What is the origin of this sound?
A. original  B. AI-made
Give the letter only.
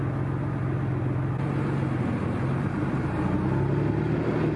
A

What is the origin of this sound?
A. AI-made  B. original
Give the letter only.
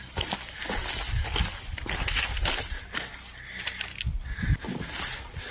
B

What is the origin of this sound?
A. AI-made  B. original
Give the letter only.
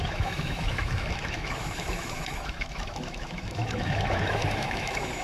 A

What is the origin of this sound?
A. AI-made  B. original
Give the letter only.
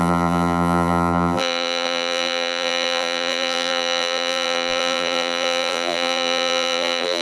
A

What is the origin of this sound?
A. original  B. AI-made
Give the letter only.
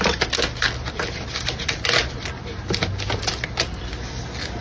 A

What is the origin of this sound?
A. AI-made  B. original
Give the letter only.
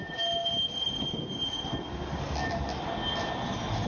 B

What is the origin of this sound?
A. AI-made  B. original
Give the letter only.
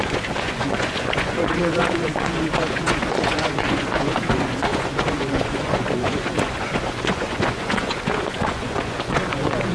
A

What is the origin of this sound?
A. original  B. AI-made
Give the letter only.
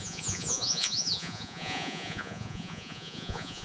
B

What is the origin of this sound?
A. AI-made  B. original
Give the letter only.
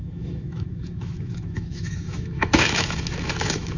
A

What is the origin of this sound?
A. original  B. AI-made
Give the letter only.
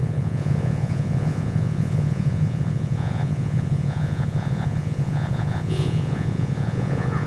B